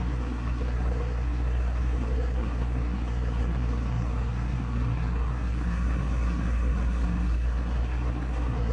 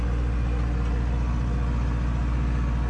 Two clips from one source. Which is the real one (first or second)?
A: second